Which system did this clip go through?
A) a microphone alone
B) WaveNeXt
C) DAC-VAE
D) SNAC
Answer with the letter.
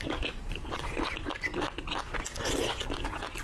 A